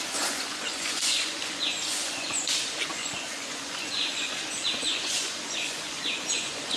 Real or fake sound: fake